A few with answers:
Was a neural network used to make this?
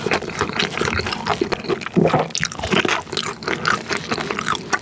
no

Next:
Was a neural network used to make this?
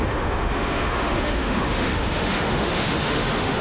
yes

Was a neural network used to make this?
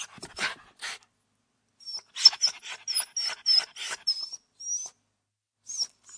no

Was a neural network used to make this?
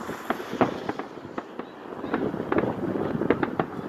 no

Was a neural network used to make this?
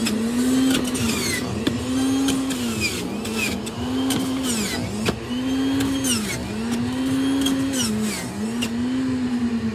no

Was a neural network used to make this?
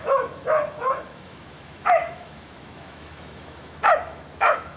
yes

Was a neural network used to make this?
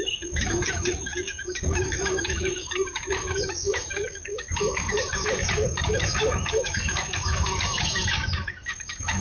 yes